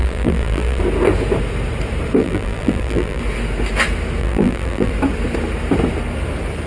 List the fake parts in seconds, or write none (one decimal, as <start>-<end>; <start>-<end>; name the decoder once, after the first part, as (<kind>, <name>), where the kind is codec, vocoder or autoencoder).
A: 0.0-0.8 (vocoder, BigVGAN v2); 2.2-3.2; 4.2-4.9